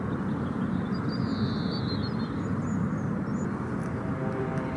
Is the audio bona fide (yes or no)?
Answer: yes